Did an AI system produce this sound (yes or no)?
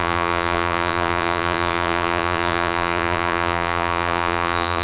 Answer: yes